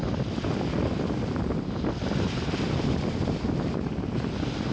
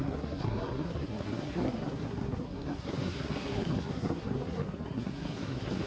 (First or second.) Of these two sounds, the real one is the first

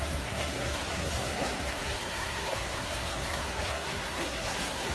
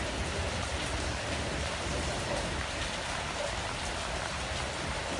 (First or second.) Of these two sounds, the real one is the second